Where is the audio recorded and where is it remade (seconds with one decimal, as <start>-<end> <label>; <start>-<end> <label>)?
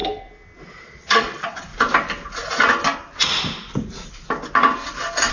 0.0-0.8 recorded; 0.8-1.7 remade; 1.7-5.3 recorded